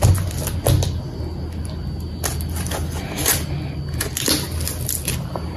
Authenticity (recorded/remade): recorded